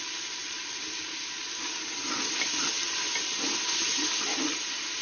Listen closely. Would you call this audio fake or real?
real